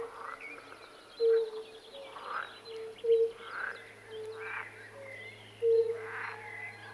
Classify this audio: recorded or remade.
recorded